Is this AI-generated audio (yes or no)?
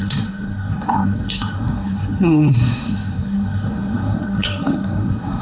yes